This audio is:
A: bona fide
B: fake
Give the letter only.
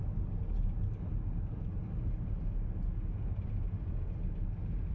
A